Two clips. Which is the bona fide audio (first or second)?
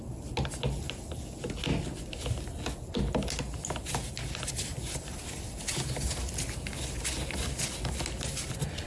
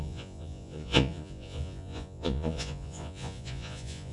first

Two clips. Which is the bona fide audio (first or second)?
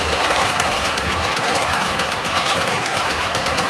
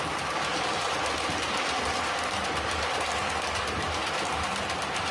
second